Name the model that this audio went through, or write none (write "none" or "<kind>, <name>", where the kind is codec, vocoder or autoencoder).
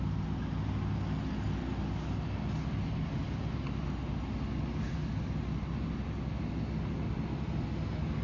none